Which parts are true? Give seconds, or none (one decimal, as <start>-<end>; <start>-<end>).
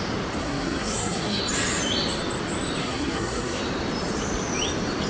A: 0.0-0.4; 1.4-2.8; 3.6-5.1